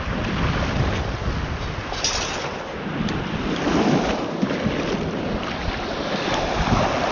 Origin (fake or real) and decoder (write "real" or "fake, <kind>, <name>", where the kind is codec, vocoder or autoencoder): real